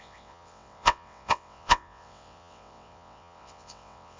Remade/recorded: remade